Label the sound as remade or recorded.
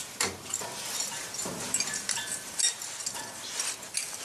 remade